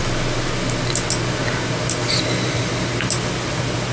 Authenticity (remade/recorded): recorded